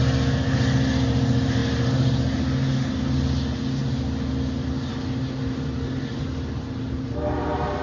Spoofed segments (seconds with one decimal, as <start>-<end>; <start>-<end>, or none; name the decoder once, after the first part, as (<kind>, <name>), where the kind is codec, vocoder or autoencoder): none